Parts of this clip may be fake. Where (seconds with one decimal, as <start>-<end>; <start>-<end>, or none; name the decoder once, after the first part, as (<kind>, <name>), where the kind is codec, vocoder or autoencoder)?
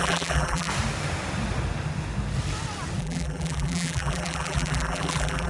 0.0-0.7 (vocoder, BigVGAN v2); 3.0-5.5